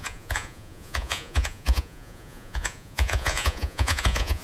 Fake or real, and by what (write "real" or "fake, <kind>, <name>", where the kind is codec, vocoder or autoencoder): fake, vocoder, Vocos